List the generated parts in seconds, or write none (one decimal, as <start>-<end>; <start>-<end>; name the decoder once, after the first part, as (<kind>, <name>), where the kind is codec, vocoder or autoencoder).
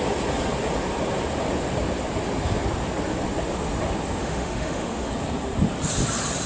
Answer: 4.2-5.1 (autoencoder, DAC-VAE)